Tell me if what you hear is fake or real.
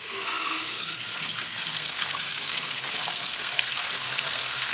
fake